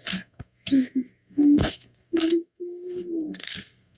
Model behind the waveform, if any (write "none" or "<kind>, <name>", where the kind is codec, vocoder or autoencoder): codec, SNAC